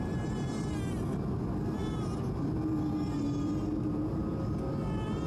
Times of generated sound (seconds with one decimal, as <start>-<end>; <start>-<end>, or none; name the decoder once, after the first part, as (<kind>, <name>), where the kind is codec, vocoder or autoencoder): none